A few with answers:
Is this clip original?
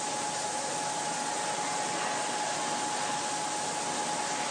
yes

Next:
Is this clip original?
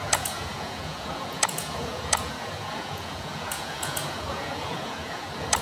no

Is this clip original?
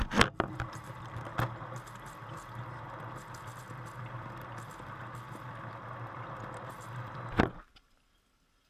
yes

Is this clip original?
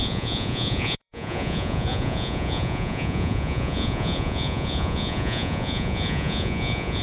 no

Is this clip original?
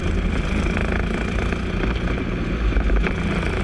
yes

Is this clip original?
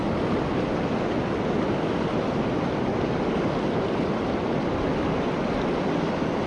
yes